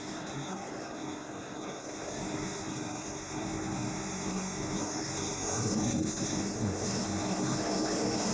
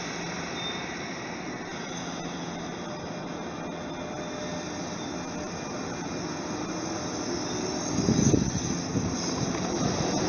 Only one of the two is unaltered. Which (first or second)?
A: second